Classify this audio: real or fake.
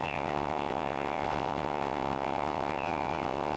fake